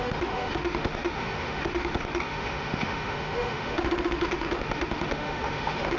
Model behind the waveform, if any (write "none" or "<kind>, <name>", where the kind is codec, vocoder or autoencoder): autoencoder, DAC-VAE